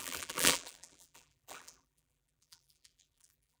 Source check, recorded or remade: remade